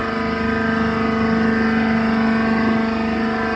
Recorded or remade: recorded